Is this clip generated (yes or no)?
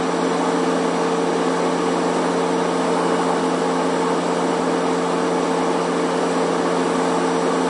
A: no